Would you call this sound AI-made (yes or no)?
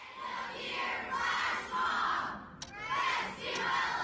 no